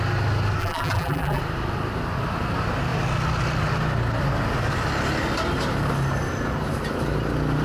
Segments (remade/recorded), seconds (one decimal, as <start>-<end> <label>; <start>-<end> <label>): 0.0-0.6 recorded; 0.6-1.4 remade; 1.4-7.6 recorded